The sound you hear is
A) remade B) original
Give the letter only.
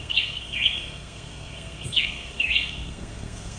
A